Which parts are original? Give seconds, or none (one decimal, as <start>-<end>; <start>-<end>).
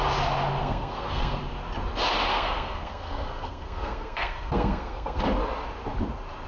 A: 0.0-0.6; 1.4-2.3; 5.2-6.5